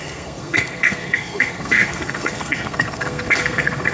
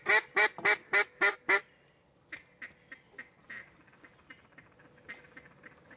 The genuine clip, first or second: second